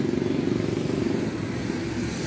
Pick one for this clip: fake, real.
real